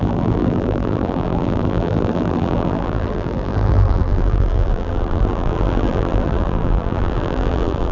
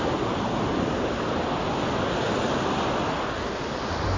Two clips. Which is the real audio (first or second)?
second